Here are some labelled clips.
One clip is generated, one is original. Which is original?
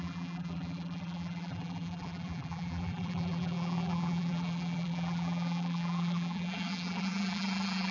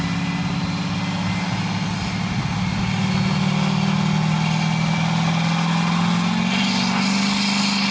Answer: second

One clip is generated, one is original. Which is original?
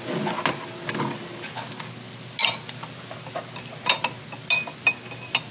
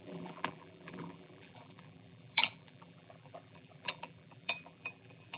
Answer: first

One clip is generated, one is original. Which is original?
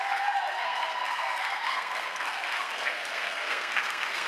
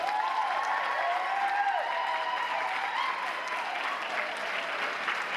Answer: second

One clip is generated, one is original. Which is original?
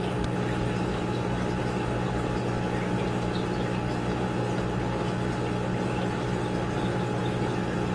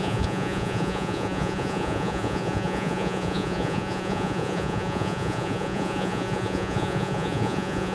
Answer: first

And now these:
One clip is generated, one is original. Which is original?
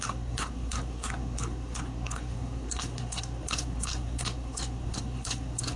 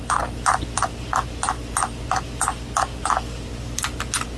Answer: second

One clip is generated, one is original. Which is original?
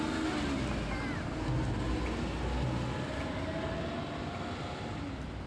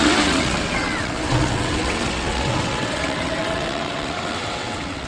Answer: first